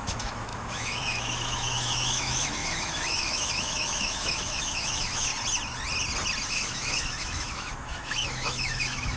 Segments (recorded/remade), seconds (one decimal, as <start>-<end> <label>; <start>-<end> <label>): 0.0-5.3 remade; 5.3-6.5 recorded; 6.5-9.2 remade